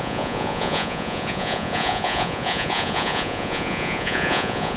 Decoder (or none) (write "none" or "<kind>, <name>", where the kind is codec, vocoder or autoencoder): vocoder, Vocos